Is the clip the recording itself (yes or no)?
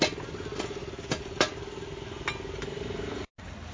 yes